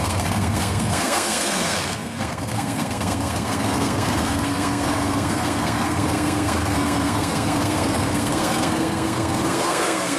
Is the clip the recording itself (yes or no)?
no